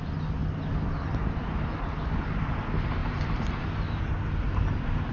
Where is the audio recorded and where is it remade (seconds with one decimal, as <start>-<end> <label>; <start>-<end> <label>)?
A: 0.0-3.0 recorded; 3.0-4.0 remade; 4.0-5.1 recorded